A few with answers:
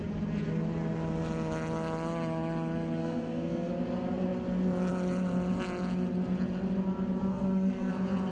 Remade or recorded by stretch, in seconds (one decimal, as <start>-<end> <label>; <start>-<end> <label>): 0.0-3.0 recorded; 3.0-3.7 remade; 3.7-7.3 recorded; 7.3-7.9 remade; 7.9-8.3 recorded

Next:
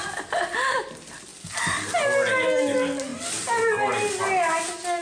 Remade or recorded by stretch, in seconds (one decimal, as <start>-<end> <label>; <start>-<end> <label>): 0.0-5.0 recorded

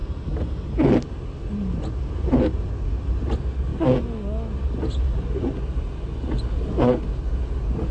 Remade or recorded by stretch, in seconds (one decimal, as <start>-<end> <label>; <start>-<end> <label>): 0.0-7.9 recorded

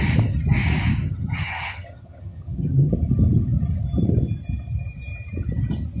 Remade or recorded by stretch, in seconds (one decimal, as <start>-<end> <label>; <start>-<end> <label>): 0.0-1.0 recorded; 1.0-2.9 remade; 2.9-6.0 recorded

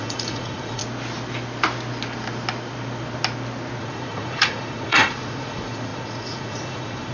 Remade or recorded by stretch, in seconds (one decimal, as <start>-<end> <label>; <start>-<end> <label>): 0.0-0.8 remade; 0.8-3.8 recorded; 3.8-7.1 remade

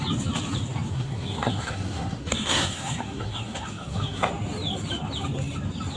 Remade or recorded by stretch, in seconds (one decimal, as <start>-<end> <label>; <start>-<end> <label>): 0.0-0.9 recorded; 0.9-4.3 remade; 4.3-6.0 recorded

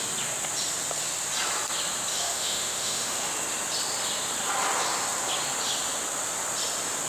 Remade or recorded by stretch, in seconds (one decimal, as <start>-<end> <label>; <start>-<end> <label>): 0.0-2.1 recorded; 2.1-3.3 remade; 3.3-7.1 recorded